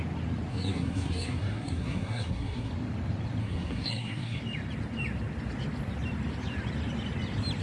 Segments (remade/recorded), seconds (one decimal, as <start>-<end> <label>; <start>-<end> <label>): 0.0-0.5 recorded; 0.5-2.7 remade; 2.7-3.4 recorded; 3.4-4.4 remade; 4.4-7.6 recorded